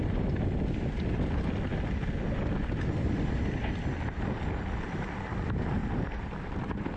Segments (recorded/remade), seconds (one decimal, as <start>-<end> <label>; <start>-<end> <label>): 0.0-7.0 recorded

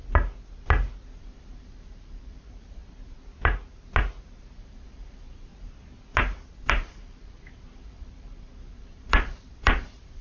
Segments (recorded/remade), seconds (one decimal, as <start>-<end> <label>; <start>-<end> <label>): 0.0-1.2 recorded; 1.2-2.8 remade; 2.8-4.6 recorded; 4.6-5.5 remade; 5.5-6.7 recorded; 6.7-10.2 remade

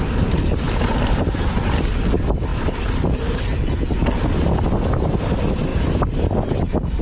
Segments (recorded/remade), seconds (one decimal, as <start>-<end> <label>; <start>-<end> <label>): 0.0-7.0 recorded

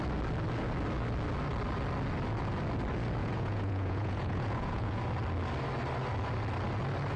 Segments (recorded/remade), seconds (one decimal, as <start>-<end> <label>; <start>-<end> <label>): 0.0-3.2 recorded; 3.2-5.0 remade; 5.0-7.2 recorded

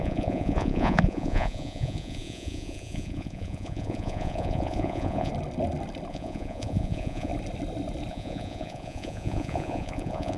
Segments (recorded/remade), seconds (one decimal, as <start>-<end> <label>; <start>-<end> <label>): 0.0-5.3 remade; 5.3-6.1 recorded; 6.1-7.3 remade; 7.3-8.1 recorded; 8.1-10.4 remade

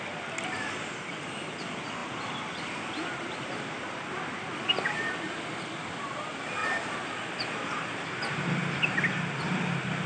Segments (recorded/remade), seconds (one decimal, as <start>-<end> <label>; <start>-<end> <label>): 0.0-10.1 recorded

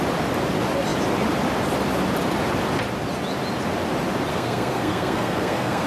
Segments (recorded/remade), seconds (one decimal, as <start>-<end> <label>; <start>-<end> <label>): 0.0-4.3 recorded; 4.3-5.9 remade